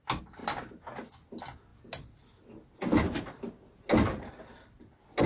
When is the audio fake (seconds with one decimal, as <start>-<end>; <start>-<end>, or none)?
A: none

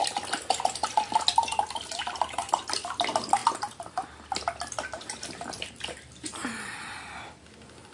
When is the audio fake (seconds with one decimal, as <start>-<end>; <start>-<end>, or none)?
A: none

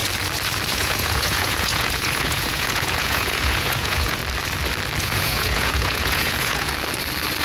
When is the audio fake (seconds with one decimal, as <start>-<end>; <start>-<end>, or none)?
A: 0.7-4.2; 5.0-6.7